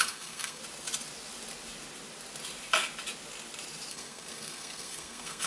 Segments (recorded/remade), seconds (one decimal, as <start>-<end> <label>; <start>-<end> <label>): 0.0-0.6 remade; 0.6-3.9 recorded; 3.9-5.5 remade